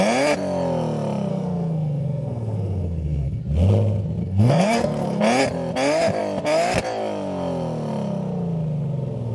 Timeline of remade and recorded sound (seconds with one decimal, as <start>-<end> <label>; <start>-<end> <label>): 0.0-1.3 recorded; 1.3-3.4 remade; 3.4-4.2 recorded; 4.2-5.2 remade; 5.2-9.3 recorded